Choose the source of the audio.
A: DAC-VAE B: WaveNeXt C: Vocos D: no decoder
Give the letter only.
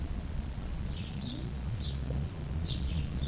C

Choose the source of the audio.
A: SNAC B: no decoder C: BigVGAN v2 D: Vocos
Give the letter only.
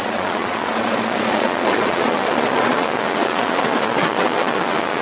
D